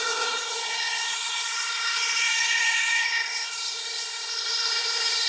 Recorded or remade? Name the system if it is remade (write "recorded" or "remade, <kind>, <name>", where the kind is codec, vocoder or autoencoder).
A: remade, codec, SNAC